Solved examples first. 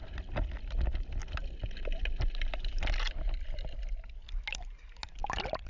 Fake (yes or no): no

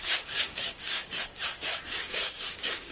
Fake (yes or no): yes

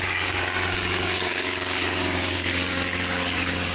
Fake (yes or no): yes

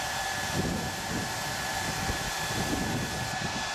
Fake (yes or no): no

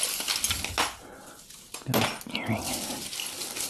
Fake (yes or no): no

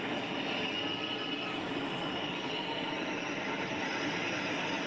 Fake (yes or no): no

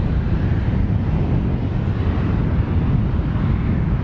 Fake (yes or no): no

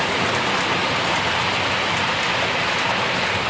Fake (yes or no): no